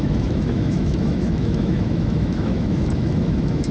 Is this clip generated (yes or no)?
yes